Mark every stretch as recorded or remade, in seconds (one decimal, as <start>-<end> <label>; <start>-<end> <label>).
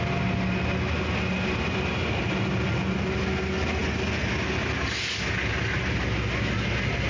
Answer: 0.0-7.1 recorded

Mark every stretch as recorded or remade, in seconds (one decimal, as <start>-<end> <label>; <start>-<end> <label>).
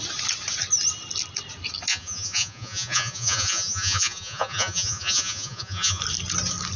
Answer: 0.0-1.9 recorded; 1.9-6.0 remade; 6.0-6.8 recorded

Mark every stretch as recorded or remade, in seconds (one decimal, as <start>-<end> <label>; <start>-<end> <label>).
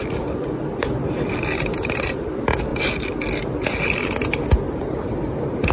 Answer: 0.0-5.7 recorded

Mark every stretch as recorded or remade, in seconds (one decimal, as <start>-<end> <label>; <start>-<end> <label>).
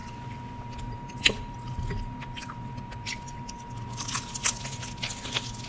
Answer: 0.0-5.7 recorded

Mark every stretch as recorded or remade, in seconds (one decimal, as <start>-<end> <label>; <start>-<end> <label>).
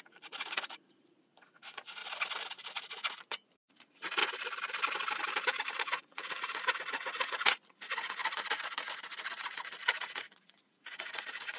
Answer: 0.0-2.0 remade; 2.0-2.7 recorded; 2.7-4.2 remade; 4.2-5.7 recorded; 5.7-11.6 remade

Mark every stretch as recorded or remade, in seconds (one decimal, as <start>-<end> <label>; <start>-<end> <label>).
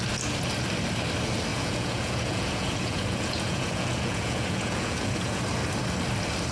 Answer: 0.0-1.5 recorded; 1.5-5.4 remade; 5.4-6.5 recorded